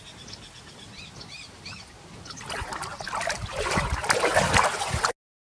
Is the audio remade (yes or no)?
no